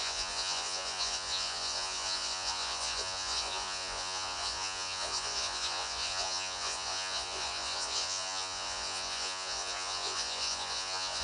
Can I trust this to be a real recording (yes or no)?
no